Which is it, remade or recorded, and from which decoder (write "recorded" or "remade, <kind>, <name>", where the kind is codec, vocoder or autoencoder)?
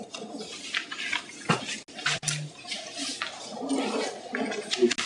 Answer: recorded